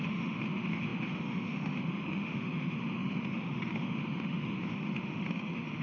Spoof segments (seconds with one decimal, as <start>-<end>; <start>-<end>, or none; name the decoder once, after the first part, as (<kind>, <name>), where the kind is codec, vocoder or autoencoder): 0.0-5.8 (autoencoder, DAC-VAE)